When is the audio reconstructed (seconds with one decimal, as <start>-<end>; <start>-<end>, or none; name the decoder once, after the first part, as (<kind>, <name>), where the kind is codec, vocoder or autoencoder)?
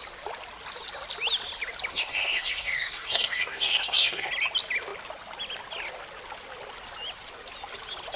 1.9-4.3 (codec, SNAC)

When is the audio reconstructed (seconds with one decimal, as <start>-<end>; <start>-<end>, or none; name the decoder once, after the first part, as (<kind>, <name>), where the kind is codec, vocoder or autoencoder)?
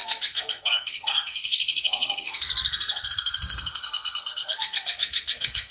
0.0-5.7 (codec, SNAC)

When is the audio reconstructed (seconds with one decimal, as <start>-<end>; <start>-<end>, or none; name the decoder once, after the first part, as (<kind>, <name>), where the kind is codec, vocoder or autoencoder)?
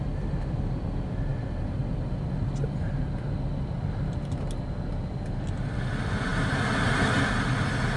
none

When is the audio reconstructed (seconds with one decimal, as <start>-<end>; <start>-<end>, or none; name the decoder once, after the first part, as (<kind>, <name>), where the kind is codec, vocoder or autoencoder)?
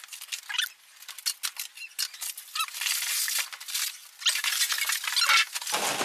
none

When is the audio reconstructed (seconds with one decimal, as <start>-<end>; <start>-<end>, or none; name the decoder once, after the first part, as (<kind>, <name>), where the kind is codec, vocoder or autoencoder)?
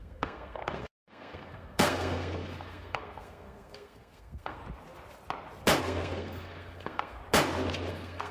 0.0-4.6 (codec, SNAC); 5.8-7.2; 7.9-8.3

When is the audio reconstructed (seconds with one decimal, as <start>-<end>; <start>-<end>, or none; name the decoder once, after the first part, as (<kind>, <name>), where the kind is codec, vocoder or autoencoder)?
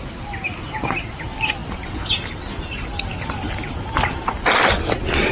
none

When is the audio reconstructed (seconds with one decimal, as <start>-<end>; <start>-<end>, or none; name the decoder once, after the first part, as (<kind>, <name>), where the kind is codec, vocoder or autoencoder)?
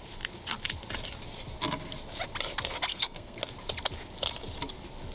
2.9-3.4 (codec, SNAC)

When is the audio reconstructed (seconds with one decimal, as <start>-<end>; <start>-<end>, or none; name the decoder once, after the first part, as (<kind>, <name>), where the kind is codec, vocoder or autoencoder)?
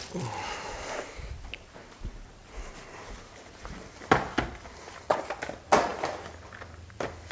none